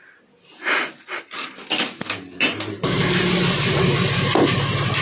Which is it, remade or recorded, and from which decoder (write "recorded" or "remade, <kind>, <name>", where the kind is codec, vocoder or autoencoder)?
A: recorded